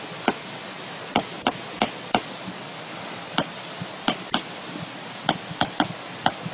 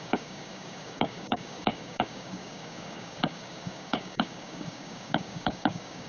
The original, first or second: first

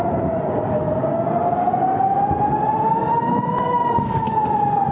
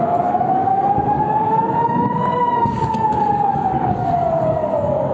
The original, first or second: first